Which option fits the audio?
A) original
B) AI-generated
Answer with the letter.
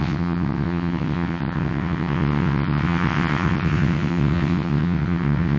B